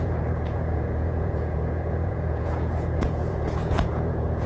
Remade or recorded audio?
remade